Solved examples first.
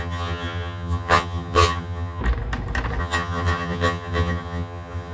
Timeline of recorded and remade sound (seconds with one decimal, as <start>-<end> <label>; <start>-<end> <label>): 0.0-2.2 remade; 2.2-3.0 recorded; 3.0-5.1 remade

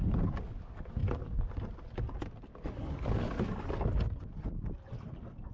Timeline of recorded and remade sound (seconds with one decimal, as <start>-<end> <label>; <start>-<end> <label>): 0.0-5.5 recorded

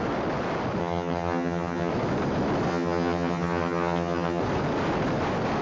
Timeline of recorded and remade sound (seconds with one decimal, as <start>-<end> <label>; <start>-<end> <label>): 0.0-0.8 recorded; 0.8-1.9 remade; 1.9-2.7 recorded; 2.7-4.4 remade; 4.4-5.6 recorded